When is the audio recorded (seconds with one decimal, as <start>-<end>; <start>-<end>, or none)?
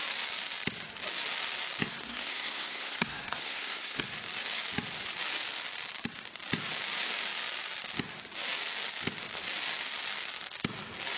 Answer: 0.0-1.9; 4.0-11.2